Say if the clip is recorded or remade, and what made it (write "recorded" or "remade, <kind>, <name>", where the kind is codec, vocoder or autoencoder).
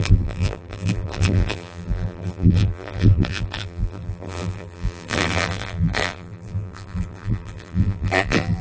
remade, vocoder, BigVGAN v2